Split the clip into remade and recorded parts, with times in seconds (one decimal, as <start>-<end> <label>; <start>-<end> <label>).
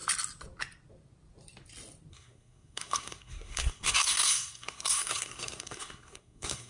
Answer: 0.0-2.1 recorded; 2.1-6.7 remade